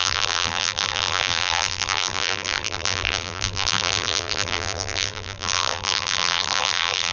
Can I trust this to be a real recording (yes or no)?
no